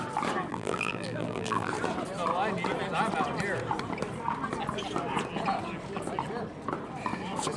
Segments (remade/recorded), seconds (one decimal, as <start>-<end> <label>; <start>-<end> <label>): 0.0-0.5 recorded; 0.5-1.7 remade; 1.7-7.6 recorded